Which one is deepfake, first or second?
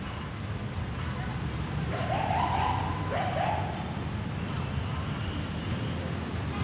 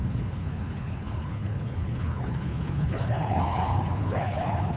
second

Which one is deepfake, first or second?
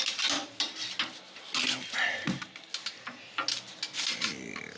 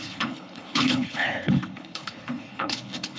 second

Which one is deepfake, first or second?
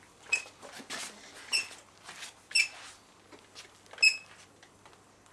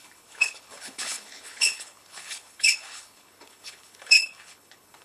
second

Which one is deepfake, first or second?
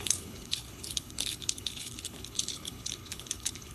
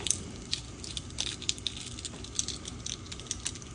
first